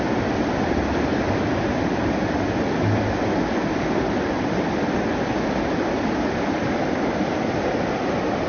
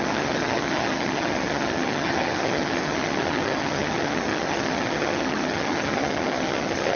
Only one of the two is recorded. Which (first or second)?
first